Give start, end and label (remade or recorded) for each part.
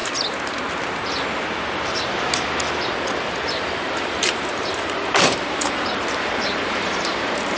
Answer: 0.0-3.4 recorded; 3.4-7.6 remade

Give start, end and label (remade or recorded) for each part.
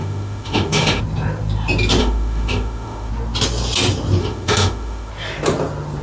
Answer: 0.0-1.0 remade; 1.0-2.0 recorded; 2.0-3.1 remade; 3.1-4.2 recorded; 4.2-5.1 remade; 5.1-6.0 recorded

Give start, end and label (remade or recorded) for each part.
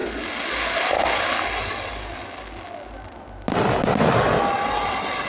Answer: 0.0-5.3 recorded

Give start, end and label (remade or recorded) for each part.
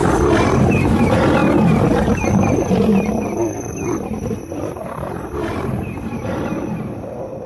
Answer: 0.0-0.6 recorded; 0.6-1.4 remade; 1.4-1.9 recorded; 1.9-7.5 remade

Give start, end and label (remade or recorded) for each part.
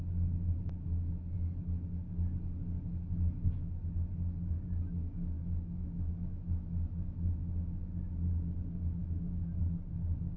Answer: 0.0-5.0 recorded; 5.0-7.3 remade; 7.3-9.0 recorded; 9.0-9.6 remade; 9.6-10.4 recorded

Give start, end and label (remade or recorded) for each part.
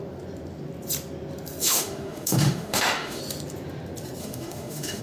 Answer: 0.0-1.6 recorded; 1.6-3.2 remade; 3.2-4.2 recorded; 4.2-5.0 remade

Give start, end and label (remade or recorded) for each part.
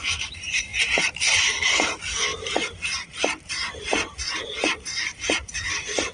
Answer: 0.0-6.1 remade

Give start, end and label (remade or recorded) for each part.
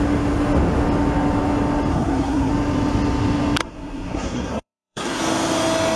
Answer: 0.0-1.9 recorded; 1.9-2.5 remade; 2.5-3.6 recorded; 3.6-5.2 remade; 5.2-6.0 recorded